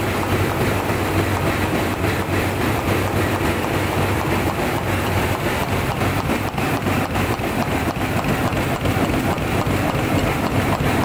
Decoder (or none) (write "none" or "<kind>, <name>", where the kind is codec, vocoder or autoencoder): vocoder, BigVGAN v2